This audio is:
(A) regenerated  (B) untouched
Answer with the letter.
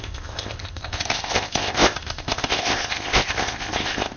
A